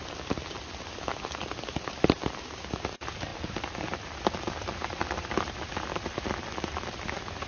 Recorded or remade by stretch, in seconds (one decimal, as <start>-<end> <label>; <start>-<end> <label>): 0.0-7.5 recorded